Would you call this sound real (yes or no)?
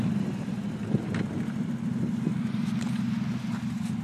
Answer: yes